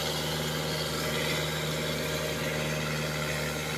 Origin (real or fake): real